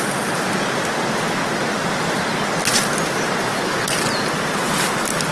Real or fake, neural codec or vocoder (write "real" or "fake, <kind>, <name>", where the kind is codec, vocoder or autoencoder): real